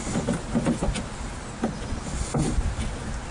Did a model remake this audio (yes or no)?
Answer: no